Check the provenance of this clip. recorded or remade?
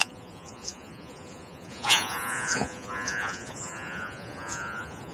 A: remade